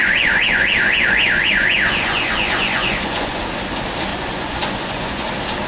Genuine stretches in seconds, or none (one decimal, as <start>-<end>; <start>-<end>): 3.4-4.1; 5.3-5.7

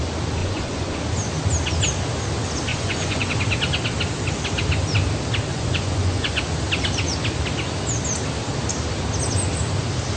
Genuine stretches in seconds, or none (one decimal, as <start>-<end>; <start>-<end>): 0.0-0.4; 1.0-2.7; 3.3-5.5; 6.4-10.2